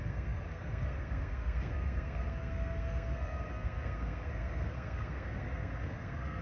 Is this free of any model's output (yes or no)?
no